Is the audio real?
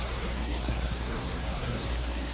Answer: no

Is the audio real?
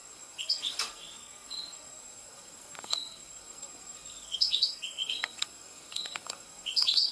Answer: no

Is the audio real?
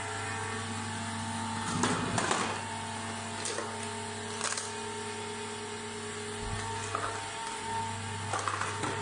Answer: yes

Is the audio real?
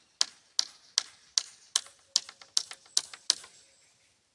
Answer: yes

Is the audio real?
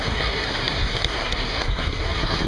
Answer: no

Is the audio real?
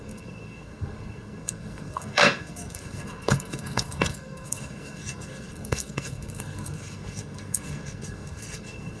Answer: no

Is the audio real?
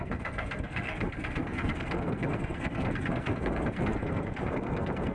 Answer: no